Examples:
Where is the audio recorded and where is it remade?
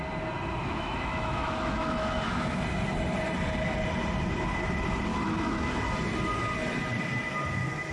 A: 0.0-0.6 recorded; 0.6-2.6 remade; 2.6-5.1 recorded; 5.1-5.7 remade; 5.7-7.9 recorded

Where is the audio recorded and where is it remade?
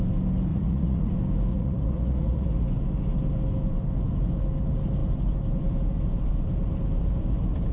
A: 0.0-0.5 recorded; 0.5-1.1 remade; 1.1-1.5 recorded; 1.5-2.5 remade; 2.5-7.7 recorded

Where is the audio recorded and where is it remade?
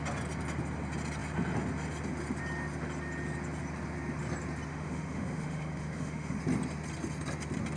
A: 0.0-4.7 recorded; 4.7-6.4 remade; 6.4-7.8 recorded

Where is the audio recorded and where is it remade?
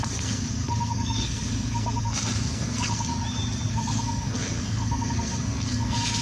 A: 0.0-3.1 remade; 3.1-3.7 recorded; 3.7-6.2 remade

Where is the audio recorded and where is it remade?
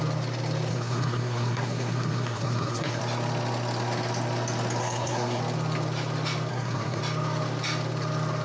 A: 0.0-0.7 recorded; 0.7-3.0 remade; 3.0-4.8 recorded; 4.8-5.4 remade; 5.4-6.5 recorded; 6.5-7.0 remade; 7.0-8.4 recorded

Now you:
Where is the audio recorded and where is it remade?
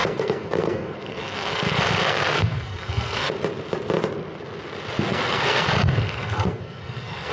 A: 0.0-3.3 remade; 3.3-5.1 recorded; 5.1-7.3 remade